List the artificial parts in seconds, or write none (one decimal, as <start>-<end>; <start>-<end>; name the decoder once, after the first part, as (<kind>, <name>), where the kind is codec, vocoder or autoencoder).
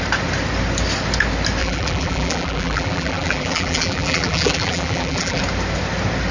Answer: 1.6-5.4 (vocoder, BigVGAN v2)